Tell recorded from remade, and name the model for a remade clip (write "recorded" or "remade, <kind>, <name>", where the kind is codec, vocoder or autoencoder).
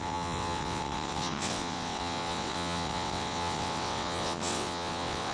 remade, vocoder, WaveNeXt